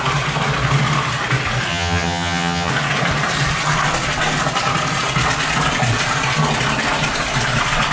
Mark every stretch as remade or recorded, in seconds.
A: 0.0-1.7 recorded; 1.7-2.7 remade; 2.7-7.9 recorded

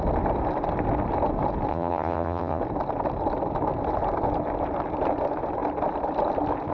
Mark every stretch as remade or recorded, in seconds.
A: 0.0-1.7 recorded; 1.7-2.6 remade; 2.6-6.7 recorded